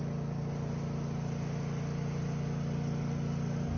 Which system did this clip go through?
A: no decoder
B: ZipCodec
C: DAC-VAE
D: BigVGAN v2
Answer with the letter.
A